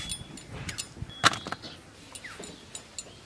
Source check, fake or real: real